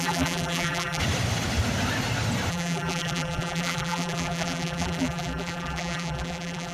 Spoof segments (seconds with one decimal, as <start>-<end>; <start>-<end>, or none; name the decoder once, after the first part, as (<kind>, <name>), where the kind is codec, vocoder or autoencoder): 0.0-1.0 (vocoder, BigVGAN v2); 2.5-6.7